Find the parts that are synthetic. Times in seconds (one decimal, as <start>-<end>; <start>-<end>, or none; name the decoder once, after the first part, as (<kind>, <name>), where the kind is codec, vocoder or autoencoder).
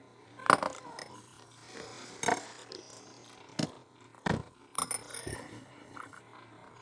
5.3-6.2 (codec, HILCodec)